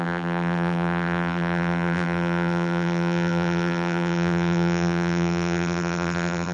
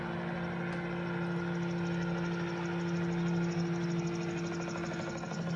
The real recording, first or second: second